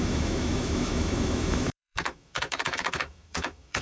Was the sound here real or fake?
fake